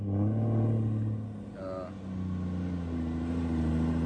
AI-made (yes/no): no